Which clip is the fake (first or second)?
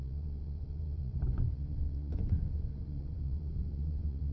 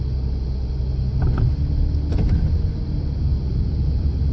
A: first